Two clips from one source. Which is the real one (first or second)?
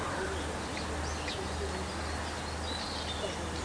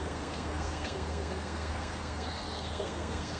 first